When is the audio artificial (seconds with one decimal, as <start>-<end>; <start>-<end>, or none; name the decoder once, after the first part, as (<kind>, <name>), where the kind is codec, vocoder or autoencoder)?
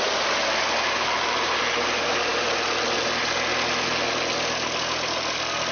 none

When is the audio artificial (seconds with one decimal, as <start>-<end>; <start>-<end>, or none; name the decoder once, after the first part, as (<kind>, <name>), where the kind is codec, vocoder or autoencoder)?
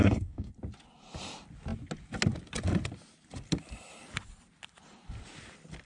0.0-0.5 (codec, DAC)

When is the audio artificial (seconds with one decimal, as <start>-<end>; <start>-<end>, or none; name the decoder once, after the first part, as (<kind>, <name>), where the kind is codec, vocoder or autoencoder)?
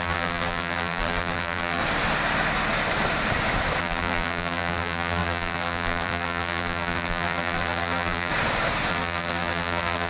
0.0-1.8 (vocoder, BigVGAN v2); 3.8-8.3; 8.9-10.1